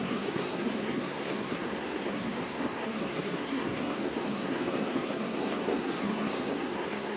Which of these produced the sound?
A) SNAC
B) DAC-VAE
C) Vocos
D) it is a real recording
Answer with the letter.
A